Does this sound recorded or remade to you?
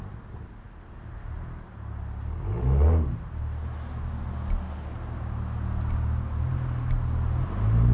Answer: recorded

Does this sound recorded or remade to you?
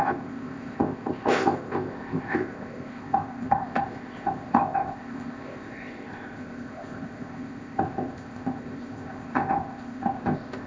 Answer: remade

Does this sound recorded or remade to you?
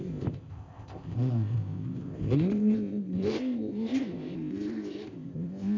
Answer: remade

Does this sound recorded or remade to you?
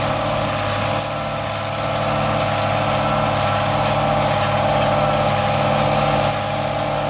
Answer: recorded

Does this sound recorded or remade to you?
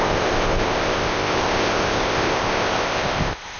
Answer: remade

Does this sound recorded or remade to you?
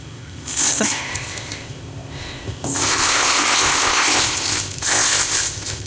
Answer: remade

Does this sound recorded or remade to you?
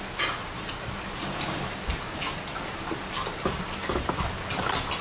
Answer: recorded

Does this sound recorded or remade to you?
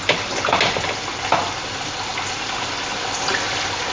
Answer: recorded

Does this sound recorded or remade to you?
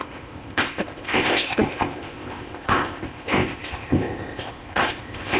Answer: remade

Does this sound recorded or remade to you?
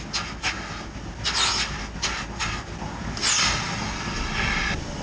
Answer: recorded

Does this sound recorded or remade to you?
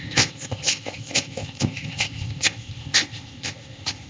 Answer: remade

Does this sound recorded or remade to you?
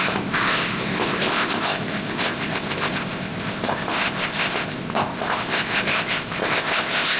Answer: remade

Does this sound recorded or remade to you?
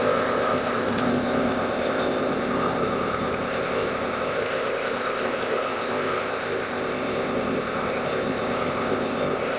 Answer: remade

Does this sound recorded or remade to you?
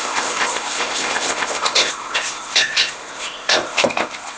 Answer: remade